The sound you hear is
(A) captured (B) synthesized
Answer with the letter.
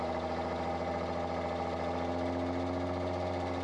A